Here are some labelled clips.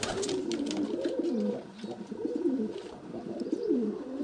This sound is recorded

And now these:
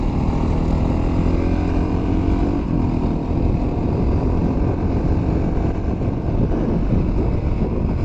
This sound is recorded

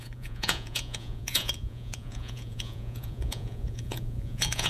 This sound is remade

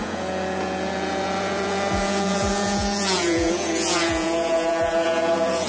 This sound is remade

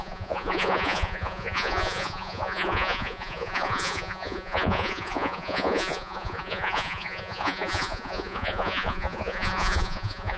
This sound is remade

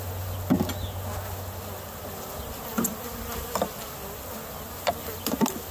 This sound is recorded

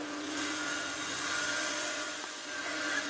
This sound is remade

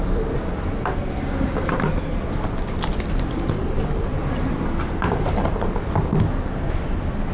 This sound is recorded